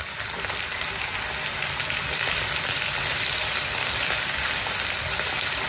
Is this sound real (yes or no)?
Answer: yes